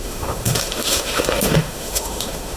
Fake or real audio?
fake